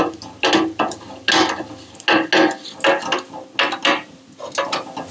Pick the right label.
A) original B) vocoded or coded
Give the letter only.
A